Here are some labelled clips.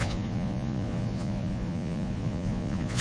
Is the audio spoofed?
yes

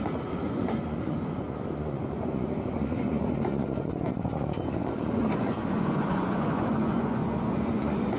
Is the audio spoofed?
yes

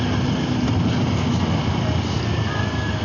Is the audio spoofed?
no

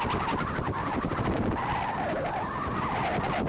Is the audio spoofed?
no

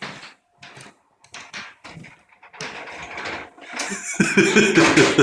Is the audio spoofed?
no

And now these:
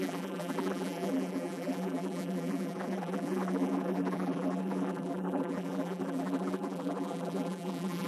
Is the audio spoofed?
yes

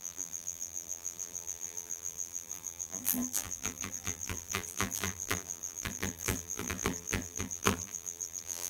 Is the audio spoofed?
yes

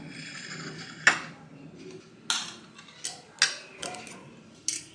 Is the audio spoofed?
no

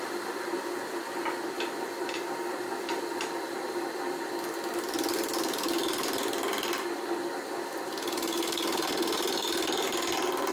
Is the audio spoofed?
no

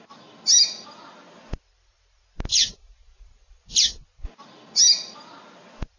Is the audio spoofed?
no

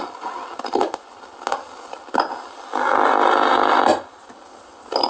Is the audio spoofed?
no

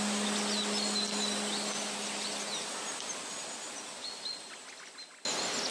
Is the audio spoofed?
no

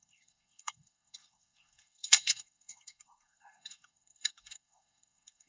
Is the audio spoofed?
yes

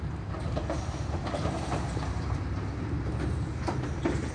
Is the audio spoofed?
yes